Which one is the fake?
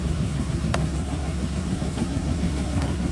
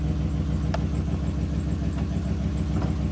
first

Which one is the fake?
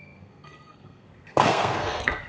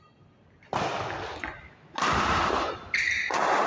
first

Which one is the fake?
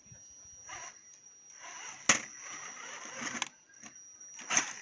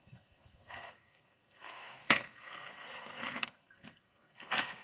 second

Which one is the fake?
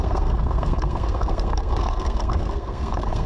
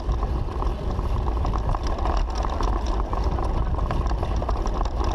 first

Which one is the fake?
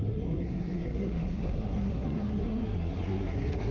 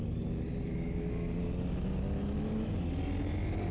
first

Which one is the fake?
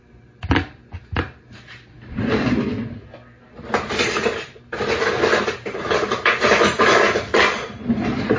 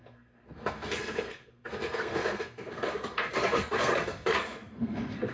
second